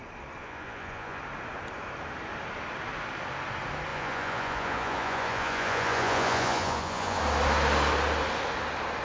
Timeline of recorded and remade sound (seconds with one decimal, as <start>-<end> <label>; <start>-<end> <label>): 0.0-0.4 recorded; 0.4-1.2 remade; 1.2-3.9 recorded; 3.9-7.2 remade; 7.2-9.0 recorded